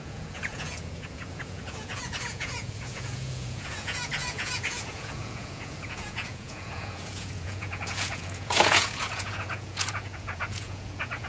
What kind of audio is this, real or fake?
fake